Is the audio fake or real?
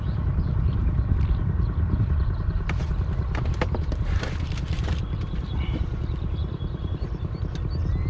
real